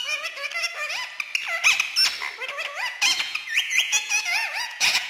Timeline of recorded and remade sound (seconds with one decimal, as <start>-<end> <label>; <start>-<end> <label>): 0.0-0.5 remade; 0.5-2.8 recorded; 2.8-5.1 remade